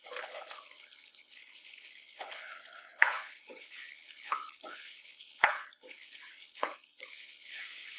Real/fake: fake